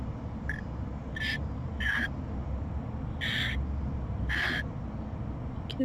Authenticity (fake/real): real